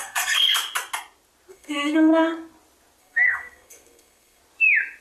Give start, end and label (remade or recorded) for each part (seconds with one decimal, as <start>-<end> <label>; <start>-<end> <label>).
0.0-0.5 remade; 0.5-1.5 recorded; 1.5-2.1 remade; 2.1-3.0 recorded; 3.0-4.4 remade; 4.4-5.0 recorded